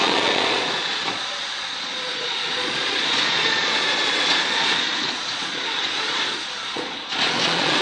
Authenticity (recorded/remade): remade